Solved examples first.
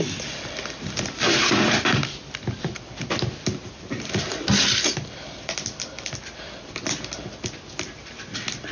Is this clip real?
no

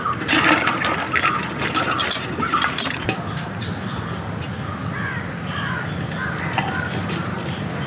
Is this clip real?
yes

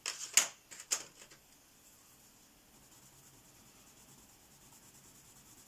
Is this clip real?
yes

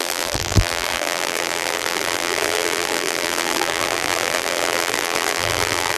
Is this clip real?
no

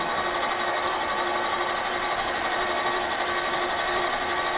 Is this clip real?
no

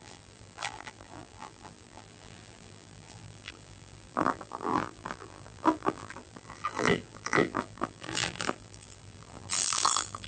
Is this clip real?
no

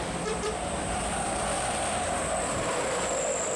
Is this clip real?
no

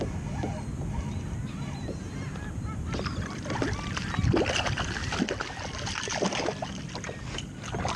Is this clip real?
yes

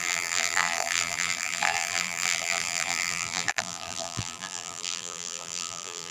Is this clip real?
no